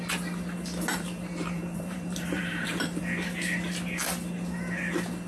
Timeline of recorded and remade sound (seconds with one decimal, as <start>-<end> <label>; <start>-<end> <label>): 0.0-0.9 recorded; 0.9-3.0 remade; 3.0-5.3 recorded